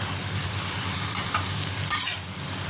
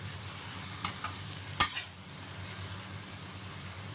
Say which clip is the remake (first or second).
first